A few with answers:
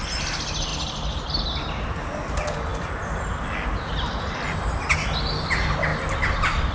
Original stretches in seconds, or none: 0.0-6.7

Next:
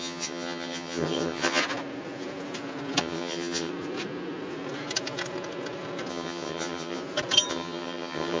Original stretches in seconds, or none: 1.6-3.0; 3.7-6.1; 7.0-7.5

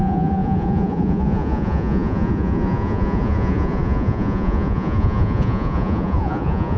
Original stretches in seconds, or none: none

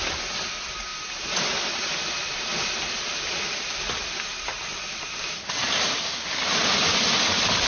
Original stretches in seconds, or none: 0.0-7.7

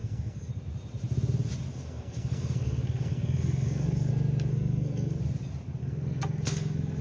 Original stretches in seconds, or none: 0.5-1.7; 4.1-4.5; 5.2-5.8